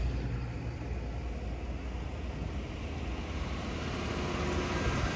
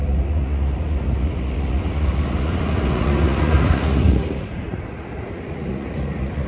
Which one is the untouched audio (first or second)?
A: first